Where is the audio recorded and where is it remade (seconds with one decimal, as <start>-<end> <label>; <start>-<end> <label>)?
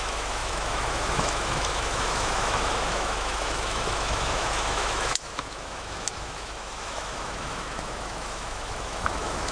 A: 0.0-9.5 remade